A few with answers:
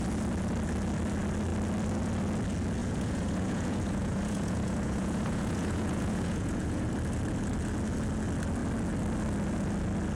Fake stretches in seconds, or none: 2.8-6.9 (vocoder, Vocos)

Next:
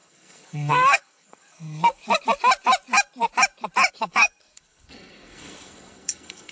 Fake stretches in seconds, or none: 0.0-2.0 (codec, SNAC); 3.9-6.5

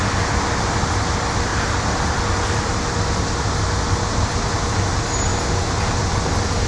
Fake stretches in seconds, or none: 1.5-2.2 (vocoder, BigVGAN v2); 5.3-6.1

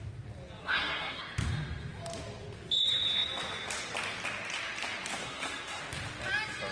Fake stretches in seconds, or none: 0.6-1.2 (codec, SNAC); 5.2-5.8

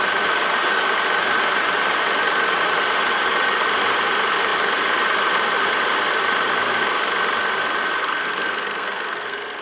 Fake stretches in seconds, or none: 8.0-9.6 (codec, SNAC)

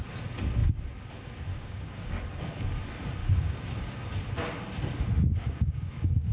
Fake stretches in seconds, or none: 1.5-2.2 (codec, DAC); 3.2-4.0; 5.3-6.3

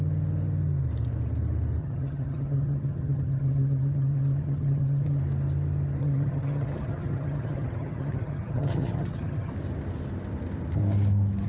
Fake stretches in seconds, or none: 1.8-5.2 (vocoder, HiFi-GAN); 6.0-9.5